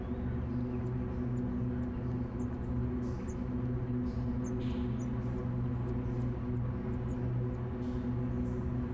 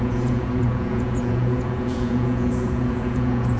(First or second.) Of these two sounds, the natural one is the first